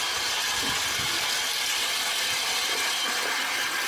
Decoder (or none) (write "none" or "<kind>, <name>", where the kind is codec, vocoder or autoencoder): none